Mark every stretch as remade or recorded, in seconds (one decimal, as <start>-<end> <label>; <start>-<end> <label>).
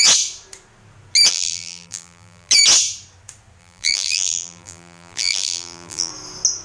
0.0-1.3 recorded; 1.3-2.5 remade; 2.5-3.6 recorded; 3.6-6.1 remade; 6.1-6.6 recorded